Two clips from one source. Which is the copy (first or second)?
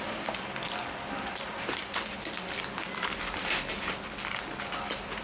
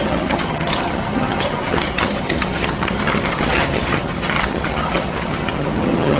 second